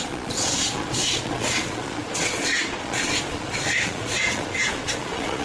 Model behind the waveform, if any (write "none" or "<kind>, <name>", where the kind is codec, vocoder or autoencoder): vocoder, Vocos